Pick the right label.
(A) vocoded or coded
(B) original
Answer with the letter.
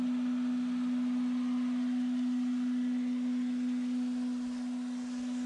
B